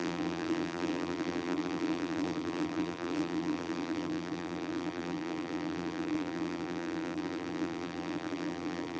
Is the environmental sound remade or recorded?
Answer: remade